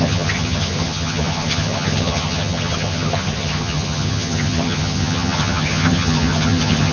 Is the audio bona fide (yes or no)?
no